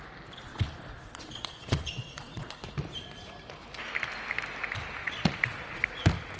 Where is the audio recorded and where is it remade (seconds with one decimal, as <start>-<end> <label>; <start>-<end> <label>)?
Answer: 0.0-0.5 recorded; 0.5-2.5 remade; 2.5-5.0 recorded; 5.0-5.8 remade; 5.8-6.4 recorded